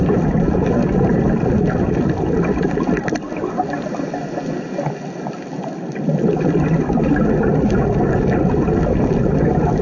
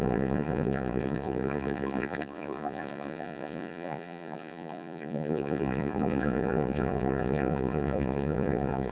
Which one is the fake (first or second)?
second